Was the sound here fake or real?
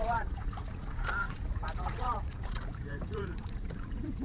fake